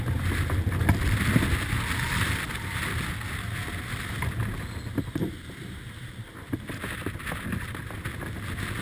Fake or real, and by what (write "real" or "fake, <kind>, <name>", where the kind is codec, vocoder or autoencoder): real